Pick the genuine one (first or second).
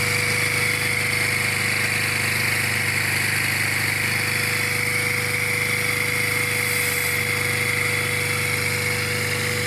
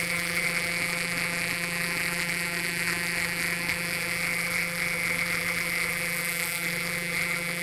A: first